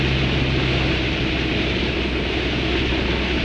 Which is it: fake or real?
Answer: real